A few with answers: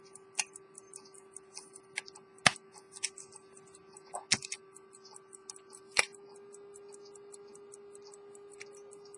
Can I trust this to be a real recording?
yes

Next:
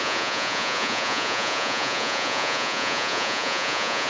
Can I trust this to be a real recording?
no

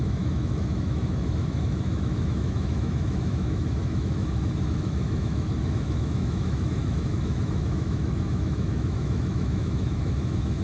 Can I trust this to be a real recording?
no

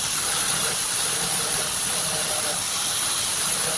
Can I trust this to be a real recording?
no